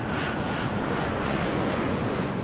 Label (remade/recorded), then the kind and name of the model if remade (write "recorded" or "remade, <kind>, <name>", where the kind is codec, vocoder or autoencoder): remade, vocoder, Vocos